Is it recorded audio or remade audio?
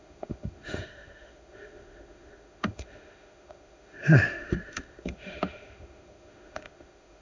remade